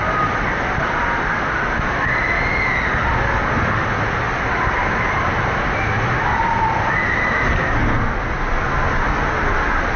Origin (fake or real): real